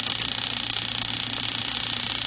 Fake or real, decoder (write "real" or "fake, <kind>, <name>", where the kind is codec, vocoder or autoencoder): real